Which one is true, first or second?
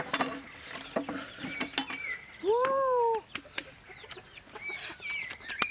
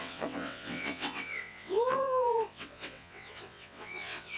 first